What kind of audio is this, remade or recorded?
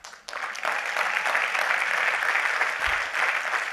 recorded